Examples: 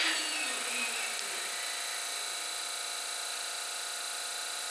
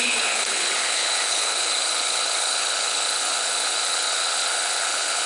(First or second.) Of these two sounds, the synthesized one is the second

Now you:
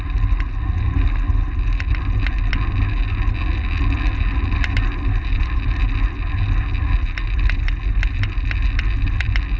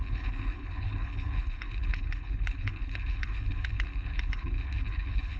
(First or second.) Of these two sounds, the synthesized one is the second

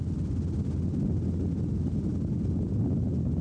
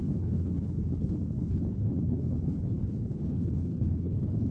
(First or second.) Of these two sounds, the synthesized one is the second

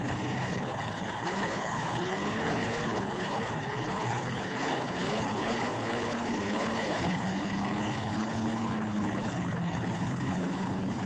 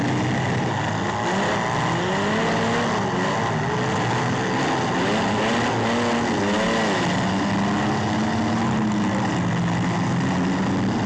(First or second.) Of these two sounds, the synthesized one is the first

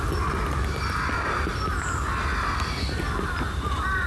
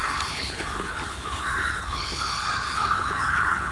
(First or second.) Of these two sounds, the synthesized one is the second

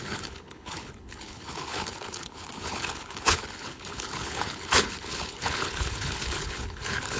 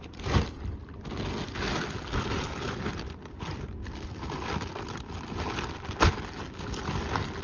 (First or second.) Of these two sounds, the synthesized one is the first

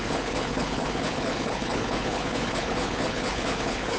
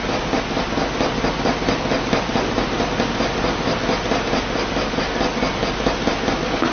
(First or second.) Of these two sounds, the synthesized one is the first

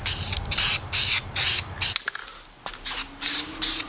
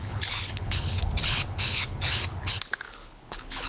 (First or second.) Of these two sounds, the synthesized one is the second